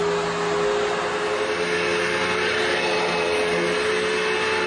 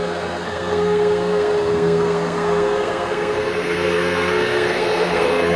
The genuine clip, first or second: first